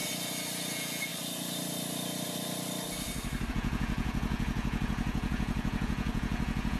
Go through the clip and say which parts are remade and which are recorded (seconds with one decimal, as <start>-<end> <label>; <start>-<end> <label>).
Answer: 0.0-0.7 recorded; 0.7-1.1 remade; 1.1-3.5 recorded; 3.5-6.8 remade